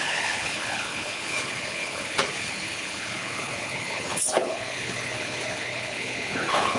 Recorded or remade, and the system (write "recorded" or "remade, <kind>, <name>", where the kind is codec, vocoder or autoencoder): remade, codec, HILCodec